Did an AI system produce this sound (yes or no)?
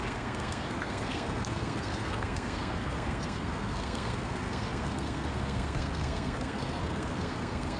yes